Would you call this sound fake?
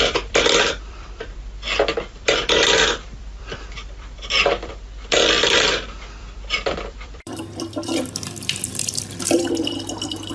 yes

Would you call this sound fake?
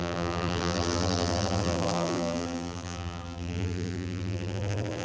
yes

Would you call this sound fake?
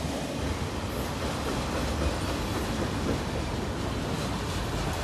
no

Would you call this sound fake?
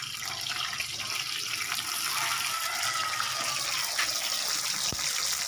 no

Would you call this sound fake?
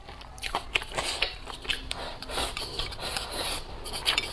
no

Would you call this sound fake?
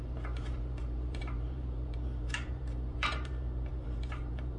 yes